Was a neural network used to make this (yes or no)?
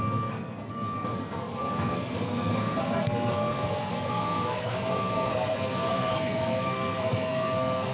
yes